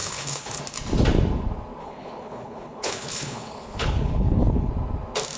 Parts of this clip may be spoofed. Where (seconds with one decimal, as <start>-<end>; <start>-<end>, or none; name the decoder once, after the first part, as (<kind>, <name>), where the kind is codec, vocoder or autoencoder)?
0.0-0.6 (codec, HILCodec); 1.8-4.7